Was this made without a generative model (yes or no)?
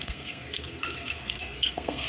no